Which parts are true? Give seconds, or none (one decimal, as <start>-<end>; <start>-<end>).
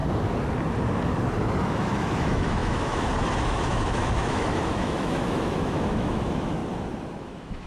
0.0-1.6; 6.6-7.2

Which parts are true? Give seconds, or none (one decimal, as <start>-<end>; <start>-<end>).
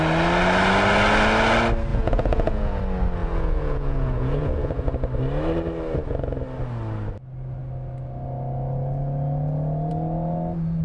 0.0-1.9; 2.8-3.2; 4.9-10.8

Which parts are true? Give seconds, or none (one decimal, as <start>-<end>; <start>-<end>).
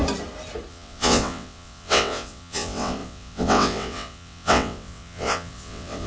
0.0-0.7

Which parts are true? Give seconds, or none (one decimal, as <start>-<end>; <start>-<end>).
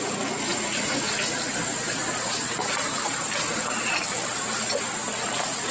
0.0-0.5; 1.1-5.7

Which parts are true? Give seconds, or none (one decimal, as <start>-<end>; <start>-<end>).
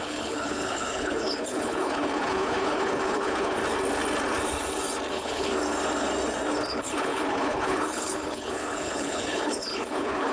3.6-5.1; 5.5-6.7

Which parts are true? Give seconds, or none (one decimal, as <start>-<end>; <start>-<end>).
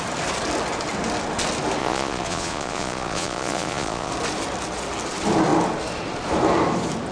0.0-1.8; 4.1-7.1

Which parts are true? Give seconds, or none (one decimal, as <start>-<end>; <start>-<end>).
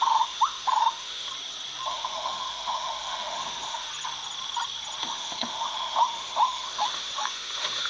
1.3-1.9; 3.9-5.0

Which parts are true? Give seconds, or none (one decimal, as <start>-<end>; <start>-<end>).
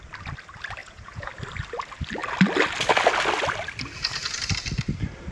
0.0-0.8; 1.3-5.3